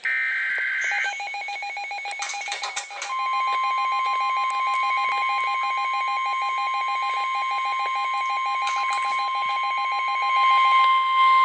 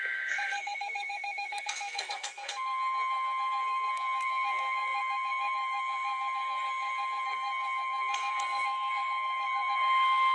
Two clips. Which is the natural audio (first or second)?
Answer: first